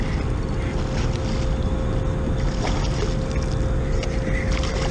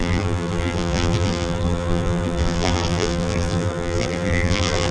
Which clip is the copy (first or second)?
second